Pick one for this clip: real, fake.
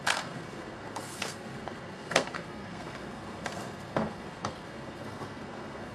fake